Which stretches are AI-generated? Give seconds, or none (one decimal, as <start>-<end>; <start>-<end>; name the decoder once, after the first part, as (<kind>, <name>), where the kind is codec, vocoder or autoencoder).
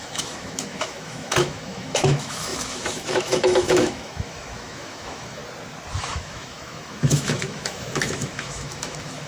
0.0-5.4 (autoencoder, DAC-VAE); 6.0-9.3